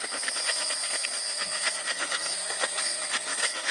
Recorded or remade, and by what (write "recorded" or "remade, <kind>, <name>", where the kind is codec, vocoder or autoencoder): remade, codec, SNAC